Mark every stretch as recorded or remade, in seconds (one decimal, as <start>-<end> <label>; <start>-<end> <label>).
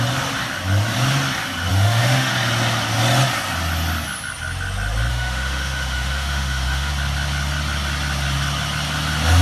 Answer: 0.0-1.7 recorded; 1.7-2.3 remade; 2.3-5.1 recorded; 5.1-6.9 remade; 6.9-9.4 recorded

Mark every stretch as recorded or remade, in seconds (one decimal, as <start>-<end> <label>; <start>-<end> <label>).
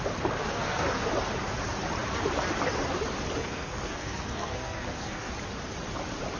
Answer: 0.0-0.4 recorded; 0.4-1.1 remade; 1.1-3.4 recorded; 3.4-5.3 remade; 5.3-6.4 recorded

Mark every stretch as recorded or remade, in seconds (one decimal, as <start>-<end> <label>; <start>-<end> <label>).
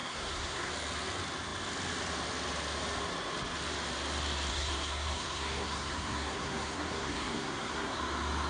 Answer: 0.0-0.7 remade; 0.7-4.5 recorded; 4.5-8.0 remade; 8.0-8.5 recorded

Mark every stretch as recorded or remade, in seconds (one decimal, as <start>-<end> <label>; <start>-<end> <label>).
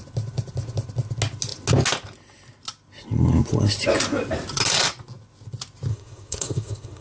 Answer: 0.0-5.9 recorded; 5.9-7.0 remade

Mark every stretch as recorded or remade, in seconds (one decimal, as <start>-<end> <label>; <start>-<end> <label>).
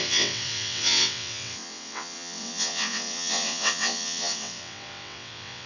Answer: 0.0-5.7 remade